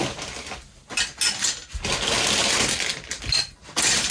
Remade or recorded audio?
recorded